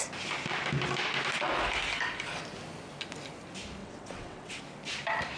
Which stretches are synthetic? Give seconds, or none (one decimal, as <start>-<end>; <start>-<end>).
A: 3.8-4.6